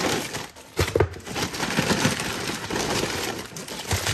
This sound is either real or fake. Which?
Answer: real